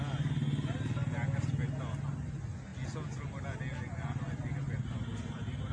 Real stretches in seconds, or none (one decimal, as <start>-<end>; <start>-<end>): 0.0-5.7